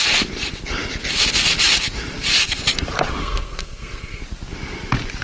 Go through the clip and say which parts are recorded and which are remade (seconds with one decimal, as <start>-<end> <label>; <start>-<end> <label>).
0.0-3.2 recorded; 3.2-4.2 remade; 4.2-5.2 recorded